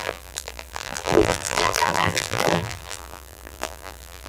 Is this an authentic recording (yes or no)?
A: no